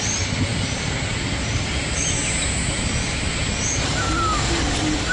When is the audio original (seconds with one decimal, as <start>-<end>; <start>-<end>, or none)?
0.0-5.1